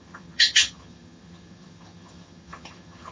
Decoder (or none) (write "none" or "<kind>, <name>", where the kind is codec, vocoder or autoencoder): vocoder, HiFi-GAN